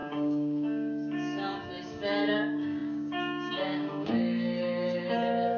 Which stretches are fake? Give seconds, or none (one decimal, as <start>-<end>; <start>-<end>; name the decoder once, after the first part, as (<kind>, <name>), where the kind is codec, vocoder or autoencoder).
0.0-5.6 (codec, DAC)

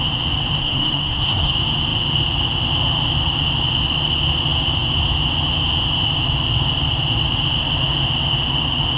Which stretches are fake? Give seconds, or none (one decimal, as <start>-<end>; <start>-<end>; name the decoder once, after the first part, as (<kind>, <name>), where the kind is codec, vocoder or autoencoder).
0.6-1.5 (codec, SNAC)